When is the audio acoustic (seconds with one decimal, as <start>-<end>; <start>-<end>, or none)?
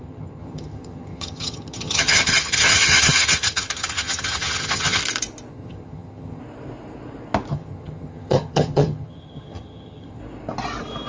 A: 5.0-5.5; 6.4-7.5; 10.2-11.1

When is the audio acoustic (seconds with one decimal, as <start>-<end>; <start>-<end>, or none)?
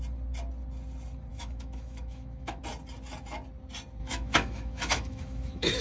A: 0.0-1.3; 2.6-4.0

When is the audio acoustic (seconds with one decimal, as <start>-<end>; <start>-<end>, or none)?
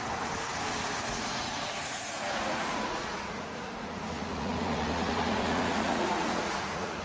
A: 0.0-1.1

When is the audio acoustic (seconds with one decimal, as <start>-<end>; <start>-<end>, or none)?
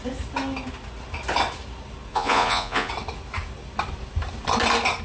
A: 0.0-2.1; 2.9-5.0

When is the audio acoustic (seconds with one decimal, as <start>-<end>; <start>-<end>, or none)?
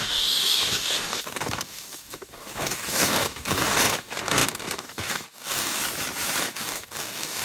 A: 5.8-6.4